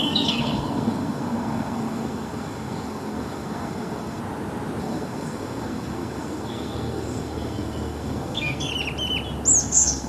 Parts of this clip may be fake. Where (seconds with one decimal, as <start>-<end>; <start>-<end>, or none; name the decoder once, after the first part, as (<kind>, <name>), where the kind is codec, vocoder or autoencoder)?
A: 0.0-4.2 (codec, SNAC); 4.8-8.7; 9.6-10.1